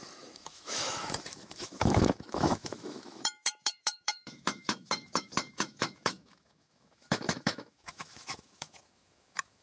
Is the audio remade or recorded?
remade